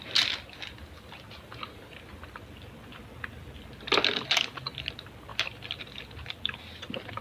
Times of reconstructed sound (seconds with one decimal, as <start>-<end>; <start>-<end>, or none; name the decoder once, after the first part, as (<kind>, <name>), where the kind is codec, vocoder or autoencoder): none